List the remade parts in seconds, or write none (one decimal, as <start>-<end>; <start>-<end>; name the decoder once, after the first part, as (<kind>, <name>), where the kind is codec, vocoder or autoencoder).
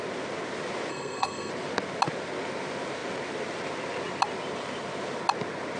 0.9-1.5 (codec, SNAC)